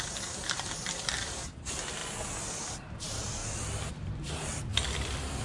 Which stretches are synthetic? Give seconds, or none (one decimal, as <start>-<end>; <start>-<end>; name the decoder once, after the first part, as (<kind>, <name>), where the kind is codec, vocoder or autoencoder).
0.0-2.0 (vocoder, BigVGAN v2); 2.7-3.4; 3.9-4.7